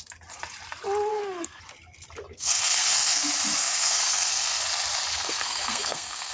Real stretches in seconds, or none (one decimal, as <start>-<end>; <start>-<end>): 0.0-1.1; 1.6-2.3; 3.2-3.6; 4.6-5.1